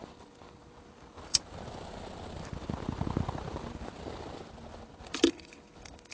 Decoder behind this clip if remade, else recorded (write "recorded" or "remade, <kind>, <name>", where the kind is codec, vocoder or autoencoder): remade, vocoder, BigVGAN v2